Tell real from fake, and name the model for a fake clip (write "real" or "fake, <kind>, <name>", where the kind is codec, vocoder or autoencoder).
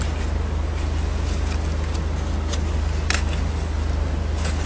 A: real